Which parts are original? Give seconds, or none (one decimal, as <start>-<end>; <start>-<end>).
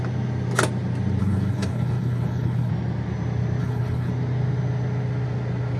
0.0-1.2; 2.7-3.6; 4.1-5.8